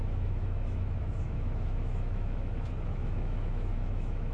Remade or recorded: remade